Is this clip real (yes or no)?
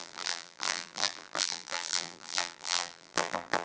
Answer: no